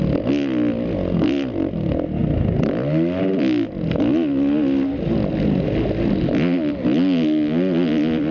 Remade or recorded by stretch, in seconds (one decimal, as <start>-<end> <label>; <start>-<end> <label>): 0.0-8.3 recorded